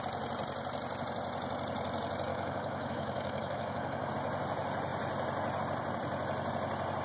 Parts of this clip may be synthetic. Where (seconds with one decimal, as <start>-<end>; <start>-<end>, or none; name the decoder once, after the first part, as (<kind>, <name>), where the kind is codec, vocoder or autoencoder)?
2.3-4.1 (autoencoder, DAC-VAE)